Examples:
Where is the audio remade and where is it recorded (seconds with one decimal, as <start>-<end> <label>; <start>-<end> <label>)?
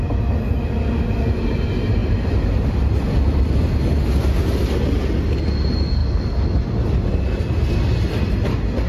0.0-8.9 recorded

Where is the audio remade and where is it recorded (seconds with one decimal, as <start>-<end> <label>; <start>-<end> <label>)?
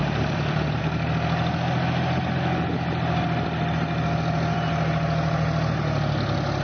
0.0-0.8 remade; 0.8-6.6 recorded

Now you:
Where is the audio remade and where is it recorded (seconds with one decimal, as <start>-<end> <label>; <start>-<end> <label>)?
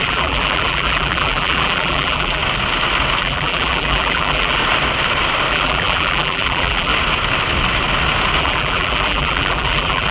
0.0-2.4 remade; 2.4-3.2 recorded; 3.2-4.6 remade; 4.6-5.5 recorded; 5.5-6.9 remade; 6.9-8.4 recorded; 8.4-10.1 remade